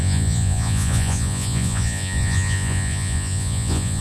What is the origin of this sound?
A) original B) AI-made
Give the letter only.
B